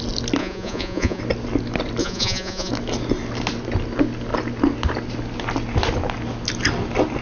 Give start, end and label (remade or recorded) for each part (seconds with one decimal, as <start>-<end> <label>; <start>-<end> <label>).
0.0-0.4 recorded; 0.4-1.2 remade; 1.2-2.0 recorded; 2.0-2.7 remade; 2.7-7.2 recorded